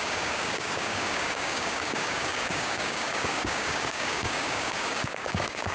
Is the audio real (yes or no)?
no